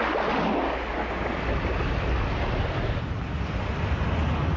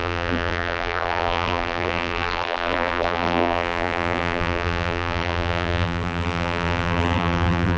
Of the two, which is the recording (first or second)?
first